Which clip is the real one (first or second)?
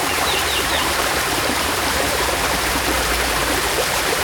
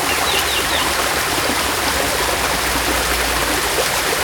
second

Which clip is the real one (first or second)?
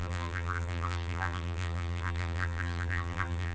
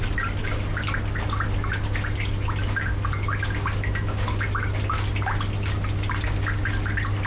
second